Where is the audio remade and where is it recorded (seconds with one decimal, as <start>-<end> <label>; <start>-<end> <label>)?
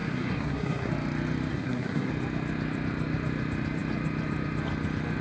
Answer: 0.0-0.9 remade; 0.9-1.5 recorded; 1.5-2.1 remade; 2.1-5.2 recorded